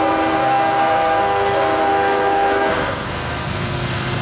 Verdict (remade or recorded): remade